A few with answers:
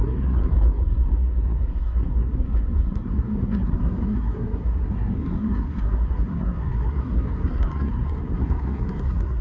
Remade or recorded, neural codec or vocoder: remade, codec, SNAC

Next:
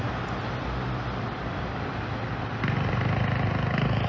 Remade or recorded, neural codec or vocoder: recorded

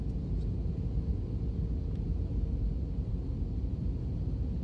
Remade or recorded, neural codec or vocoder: recorded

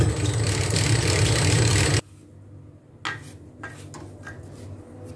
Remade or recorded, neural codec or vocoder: recorded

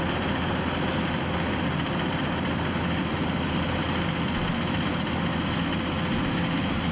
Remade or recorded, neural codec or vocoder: recorded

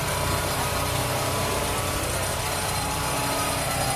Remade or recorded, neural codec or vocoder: remade, vocoder, BigVGAN v2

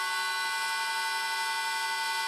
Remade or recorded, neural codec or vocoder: recorded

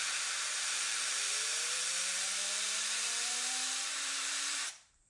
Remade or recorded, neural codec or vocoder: remade, vocoder, BigVGAN v2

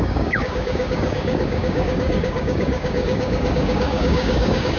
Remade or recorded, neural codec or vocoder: remade, codec, DAC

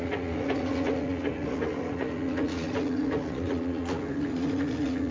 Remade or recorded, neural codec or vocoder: remade, vocoder, Vocos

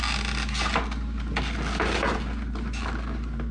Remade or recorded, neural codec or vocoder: recorded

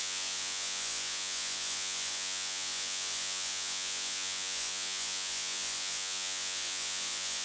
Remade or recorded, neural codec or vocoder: remade, vocoder, Vocos